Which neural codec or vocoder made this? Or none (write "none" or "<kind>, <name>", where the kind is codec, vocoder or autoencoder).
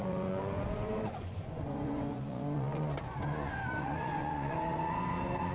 vocoder, Vocos